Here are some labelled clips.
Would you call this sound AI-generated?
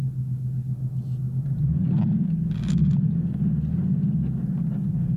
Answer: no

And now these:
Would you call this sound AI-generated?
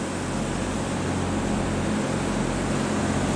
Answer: no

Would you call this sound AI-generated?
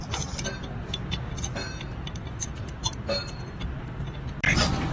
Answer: no